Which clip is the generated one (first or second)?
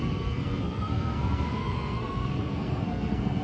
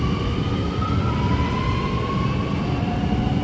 first